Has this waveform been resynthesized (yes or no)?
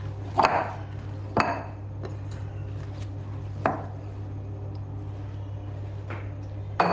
no